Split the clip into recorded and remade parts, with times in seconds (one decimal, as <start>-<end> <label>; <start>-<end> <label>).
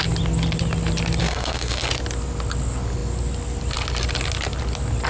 0.0-1.2 recorded; 1.2-1.9 remade; 1.9-5.1 recorded